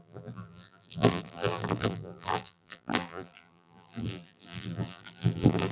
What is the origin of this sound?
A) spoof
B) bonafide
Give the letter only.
A